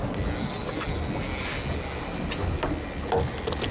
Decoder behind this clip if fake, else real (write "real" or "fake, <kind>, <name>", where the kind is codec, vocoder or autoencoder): real